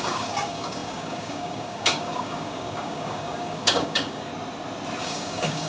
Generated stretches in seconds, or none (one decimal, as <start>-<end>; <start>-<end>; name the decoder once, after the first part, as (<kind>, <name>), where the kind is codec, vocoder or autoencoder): 0.0-4.3 (codec, DAC); 5.0-5.7